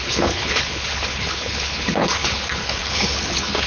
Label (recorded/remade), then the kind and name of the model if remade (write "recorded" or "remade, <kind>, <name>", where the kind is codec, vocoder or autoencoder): remade, codec, HILCodec